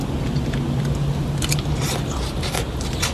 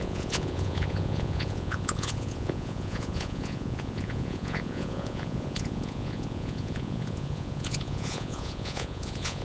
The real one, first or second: first